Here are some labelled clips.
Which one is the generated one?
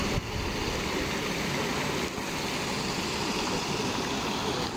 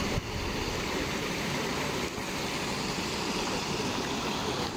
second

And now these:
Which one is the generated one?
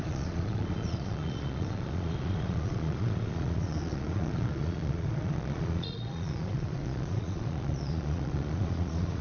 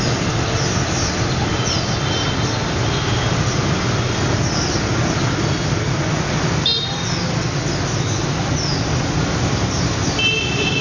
first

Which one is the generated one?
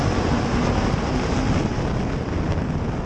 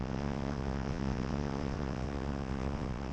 second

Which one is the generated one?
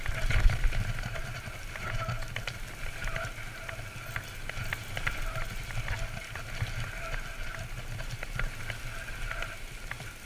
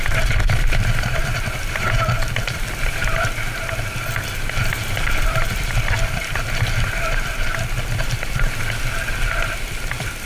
second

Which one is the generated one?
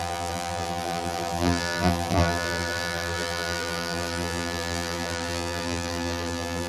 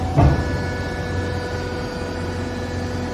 first